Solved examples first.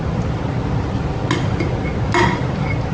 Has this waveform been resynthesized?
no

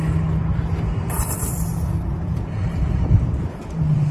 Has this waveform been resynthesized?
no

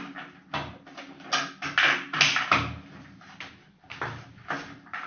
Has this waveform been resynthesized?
no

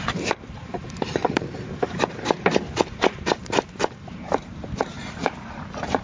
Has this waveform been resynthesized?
yes